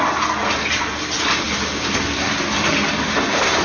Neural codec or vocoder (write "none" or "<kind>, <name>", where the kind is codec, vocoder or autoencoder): none